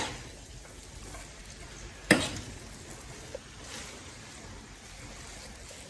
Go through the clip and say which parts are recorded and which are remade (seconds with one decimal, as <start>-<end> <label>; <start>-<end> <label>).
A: 0.0-5.9 recorded